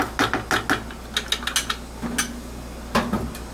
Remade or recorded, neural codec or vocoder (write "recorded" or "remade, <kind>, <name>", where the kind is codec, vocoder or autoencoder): recorded